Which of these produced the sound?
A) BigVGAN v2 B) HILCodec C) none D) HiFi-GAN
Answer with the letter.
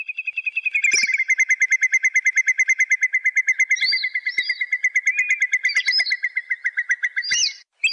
C